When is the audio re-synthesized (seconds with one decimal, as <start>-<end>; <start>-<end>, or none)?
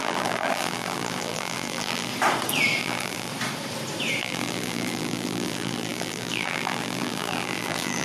0.0-2.1; 2.8-3.3; 4.2-8.0